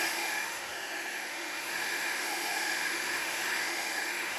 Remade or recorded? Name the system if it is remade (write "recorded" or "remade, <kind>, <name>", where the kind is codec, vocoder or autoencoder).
remade, autoencoder, DAC-VAE